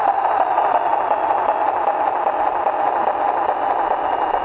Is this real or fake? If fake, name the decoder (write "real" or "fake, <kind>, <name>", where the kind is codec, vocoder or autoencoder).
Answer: real